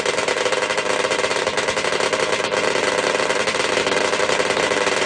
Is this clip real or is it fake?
real